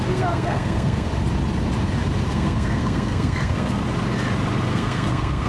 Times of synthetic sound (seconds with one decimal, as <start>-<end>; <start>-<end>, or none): 0.0-1.1; 2.3-3.8; 4.7-5.5